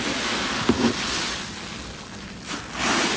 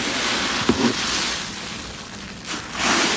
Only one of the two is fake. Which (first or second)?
second